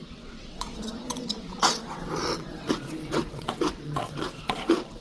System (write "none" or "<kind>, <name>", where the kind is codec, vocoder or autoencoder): vocoder, WaveNeXt